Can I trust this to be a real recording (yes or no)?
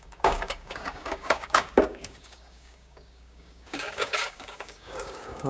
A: no